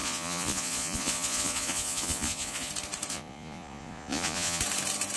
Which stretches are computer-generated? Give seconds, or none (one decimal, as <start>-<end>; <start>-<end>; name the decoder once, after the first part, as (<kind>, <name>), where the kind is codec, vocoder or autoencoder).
0.0-2.7 (vocoder, Vocos); 3.1-4.6